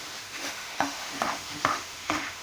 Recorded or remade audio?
remade